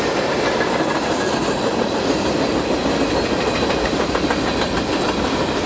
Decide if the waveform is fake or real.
real